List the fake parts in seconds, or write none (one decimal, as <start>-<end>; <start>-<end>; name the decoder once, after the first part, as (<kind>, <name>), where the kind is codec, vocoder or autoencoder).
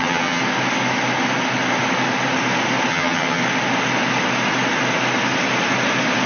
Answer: 0.0-0.4 (vocoder, HiFi-GAN); 2.9-3.4